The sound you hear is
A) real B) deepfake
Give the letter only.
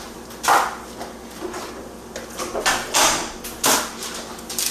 A